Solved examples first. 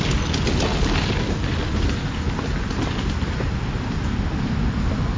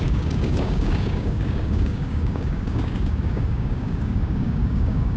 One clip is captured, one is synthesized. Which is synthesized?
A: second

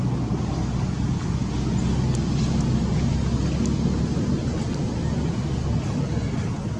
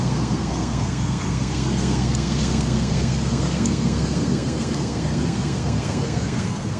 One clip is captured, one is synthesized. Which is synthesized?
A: second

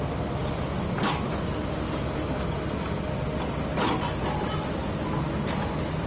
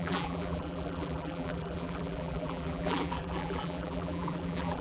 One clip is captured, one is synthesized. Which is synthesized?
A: second